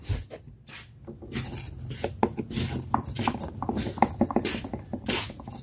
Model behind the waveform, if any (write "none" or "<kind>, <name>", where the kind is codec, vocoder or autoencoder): none